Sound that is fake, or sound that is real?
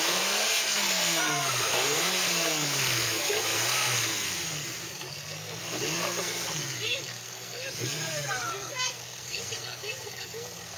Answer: fake